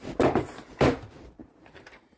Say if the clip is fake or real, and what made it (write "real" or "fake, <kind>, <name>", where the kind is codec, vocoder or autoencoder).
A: fake, vocoder, BigVGAN v2